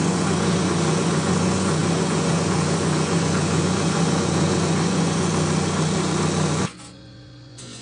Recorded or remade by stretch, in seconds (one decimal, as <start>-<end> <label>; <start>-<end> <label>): 0.0-5.3 remade; 5.3-6.5 recorded; 6.5-7.8 remade